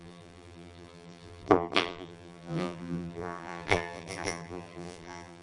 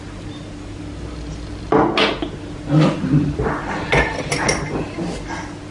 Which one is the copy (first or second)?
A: first